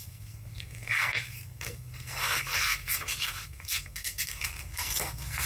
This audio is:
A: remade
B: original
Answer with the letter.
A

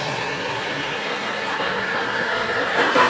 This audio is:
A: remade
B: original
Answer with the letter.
A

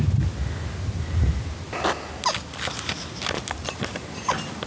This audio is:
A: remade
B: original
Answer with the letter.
B